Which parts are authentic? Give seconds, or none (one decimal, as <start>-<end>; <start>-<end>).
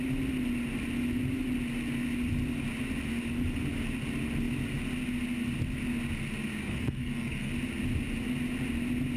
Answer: 0.0-6.6; 7.5-9.2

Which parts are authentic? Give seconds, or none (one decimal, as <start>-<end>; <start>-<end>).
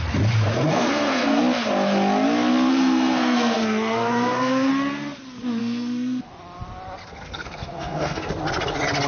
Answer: 0.0-0.7; 1.4-2.7; 4.7-5.6; 6.3-7.0; 8.3-9.1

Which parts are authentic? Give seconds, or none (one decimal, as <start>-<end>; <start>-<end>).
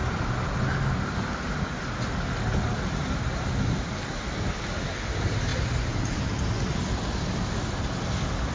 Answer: 0.0-8.5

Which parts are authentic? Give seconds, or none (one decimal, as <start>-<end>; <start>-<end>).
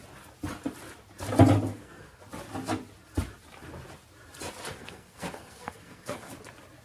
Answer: 0.0-1.7; 2.2-4.7; 6.3-6.8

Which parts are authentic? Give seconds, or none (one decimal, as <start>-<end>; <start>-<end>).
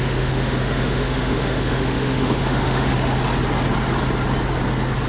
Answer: 2.9-5.1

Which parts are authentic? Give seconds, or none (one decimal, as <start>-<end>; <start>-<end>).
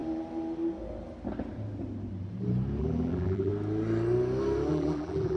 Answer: 0.0-2.8; 3.5-4.7